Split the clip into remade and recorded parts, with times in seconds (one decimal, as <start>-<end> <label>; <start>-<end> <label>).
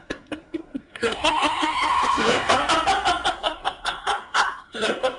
0.0-2.6 remade; 2.6-3.3 recorded; 3.3-5.2 remade